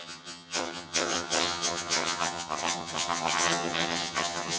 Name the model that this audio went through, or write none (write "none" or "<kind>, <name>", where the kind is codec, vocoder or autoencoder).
vocoder, HiFi-GAN